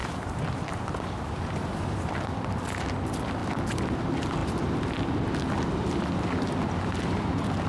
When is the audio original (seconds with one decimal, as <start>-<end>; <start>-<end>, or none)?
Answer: 0.0-7.7